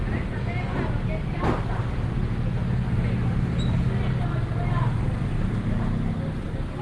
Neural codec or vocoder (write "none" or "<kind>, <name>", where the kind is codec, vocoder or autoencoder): none